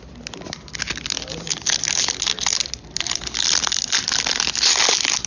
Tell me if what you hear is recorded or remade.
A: recorded